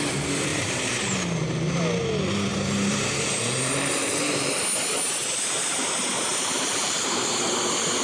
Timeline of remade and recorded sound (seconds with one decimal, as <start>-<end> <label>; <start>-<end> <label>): 0.0-0.5 recorded; 0.5-1.8 remade; 1.8-2.5 recorded; 2.5-4.5 remade; 4.5-6.3 recorded; 6.3-7.5 remade; 7.5-8.0 recorded